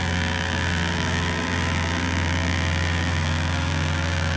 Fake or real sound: fake